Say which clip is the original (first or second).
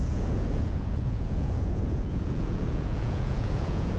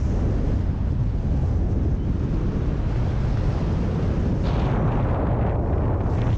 second